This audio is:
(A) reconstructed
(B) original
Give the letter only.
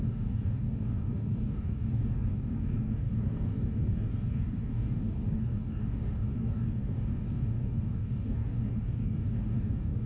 A